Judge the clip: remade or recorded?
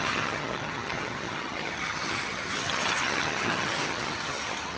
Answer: remade